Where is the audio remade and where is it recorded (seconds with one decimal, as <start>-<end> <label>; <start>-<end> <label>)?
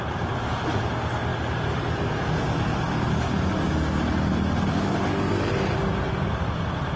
0.0-1.3 recorded; 1.3-4.0 remade; 4.0-7.0 recorded